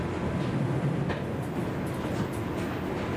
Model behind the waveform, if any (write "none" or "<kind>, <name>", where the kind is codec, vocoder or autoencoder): none